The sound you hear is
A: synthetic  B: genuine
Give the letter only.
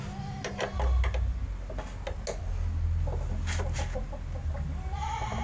B